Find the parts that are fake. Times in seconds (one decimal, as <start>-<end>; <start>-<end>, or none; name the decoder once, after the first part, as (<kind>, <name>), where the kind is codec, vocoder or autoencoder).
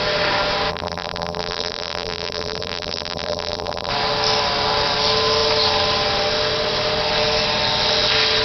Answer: 0.7-3.9 (vocoder, BigVGAN v2)